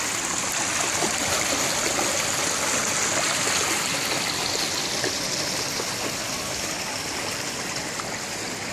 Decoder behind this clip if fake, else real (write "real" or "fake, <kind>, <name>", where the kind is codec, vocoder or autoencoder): real